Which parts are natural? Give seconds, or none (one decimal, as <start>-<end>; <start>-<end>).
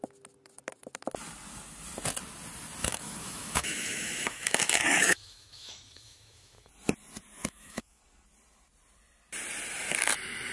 0.0-2.8; 6.7-7.4; 8.0-10.5